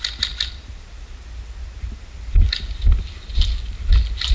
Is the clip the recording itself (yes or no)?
yes